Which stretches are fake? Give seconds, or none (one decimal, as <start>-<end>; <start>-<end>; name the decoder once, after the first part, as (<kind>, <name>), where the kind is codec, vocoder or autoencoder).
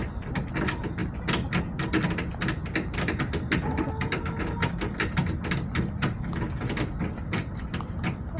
none